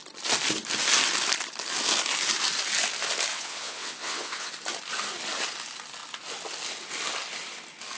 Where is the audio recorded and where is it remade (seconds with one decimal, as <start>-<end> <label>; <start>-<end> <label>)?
0.0-3.3 recorded; 3.3-4.5 remade; 4.5-8.0 recorded